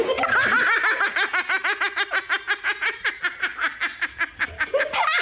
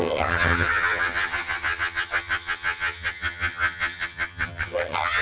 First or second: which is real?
first